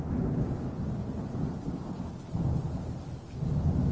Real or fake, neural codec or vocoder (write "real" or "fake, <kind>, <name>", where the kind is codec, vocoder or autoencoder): real